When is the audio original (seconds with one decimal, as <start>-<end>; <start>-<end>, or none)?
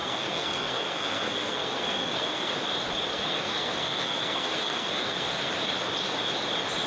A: 2.5-3.1; 5.5-6.9